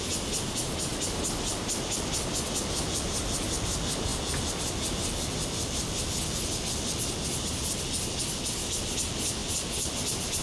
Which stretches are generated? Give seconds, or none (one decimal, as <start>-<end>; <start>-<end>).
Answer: none

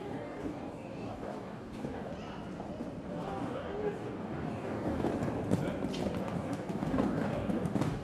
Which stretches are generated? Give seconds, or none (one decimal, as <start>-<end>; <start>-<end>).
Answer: 0.0-2.1; 3.1-5.1; 6.2-8.0

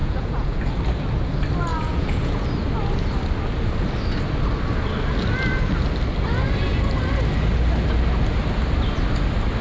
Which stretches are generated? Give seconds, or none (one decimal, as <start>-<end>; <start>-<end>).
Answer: 0.0-0.7; 1.7-2.4

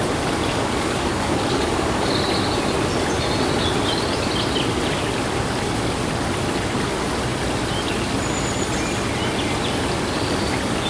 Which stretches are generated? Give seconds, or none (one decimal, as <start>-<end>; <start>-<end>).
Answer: 0.5-2.1

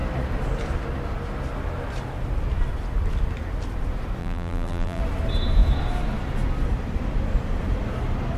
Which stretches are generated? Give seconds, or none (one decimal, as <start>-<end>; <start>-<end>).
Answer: 4.2-5.0

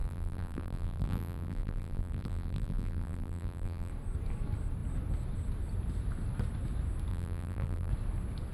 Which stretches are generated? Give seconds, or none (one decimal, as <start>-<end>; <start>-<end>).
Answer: 0.0-3.9; 7.1-7.9

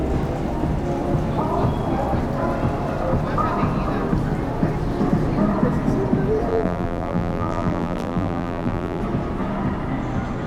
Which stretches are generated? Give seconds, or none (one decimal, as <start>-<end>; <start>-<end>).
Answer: 6.5-9.0